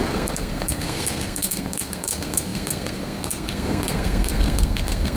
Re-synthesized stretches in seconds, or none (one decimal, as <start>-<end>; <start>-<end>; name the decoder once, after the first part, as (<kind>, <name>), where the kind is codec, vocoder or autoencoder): 0.0-5.2 (codec, SNAC)